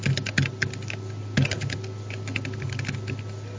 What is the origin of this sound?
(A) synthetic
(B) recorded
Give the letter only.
B